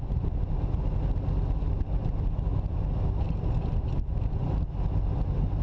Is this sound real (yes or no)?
yes